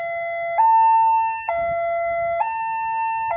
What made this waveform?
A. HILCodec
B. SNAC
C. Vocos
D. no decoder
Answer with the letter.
D